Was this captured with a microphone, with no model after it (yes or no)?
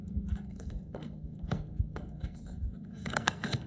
no